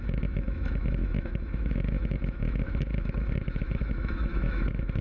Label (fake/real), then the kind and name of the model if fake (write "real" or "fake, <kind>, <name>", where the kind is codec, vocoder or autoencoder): fake, autoencoder, DAC-VAE